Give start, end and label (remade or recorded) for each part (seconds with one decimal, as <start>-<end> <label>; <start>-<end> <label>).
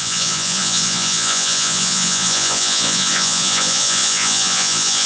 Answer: 0.0-5.1 remade